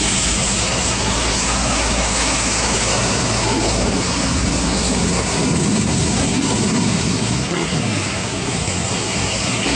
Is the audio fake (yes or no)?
yes